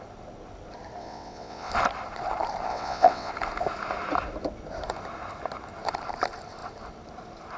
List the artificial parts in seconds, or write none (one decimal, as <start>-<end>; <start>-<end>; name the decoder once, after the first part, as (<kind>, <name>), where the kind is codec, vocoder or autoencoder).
1.0-1.7 (vocoder, WaveNeXt); 2.7-3.3